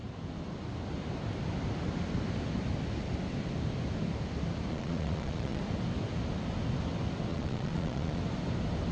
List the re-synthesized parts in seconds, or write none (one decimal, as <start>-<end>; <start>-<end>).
4.7-5.6; 7.3-8.2